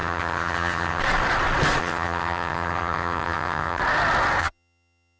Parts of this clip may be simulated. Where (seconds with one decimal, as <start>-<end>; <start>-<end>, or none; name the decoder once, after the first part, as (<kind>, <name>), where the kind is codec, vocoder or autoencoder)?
0.0-1.0 (vocoder, HiFi-GAN); 1.8-3.8; 4.4-5.2